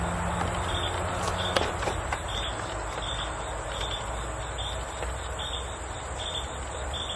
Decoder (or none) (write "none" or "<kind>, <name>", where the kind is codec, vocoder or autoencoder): none